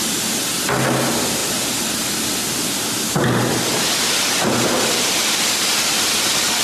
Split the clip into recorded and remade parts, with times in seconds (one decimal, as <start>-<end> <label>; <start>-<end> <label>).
0.0-6.6 recorded